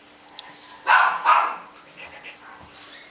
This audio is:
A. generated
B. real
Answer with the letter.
B